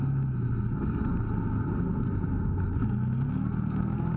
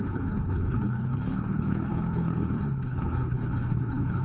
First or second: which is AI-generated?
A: second